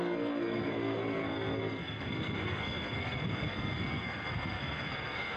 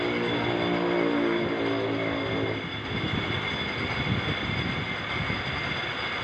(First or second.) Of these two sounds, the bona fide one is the second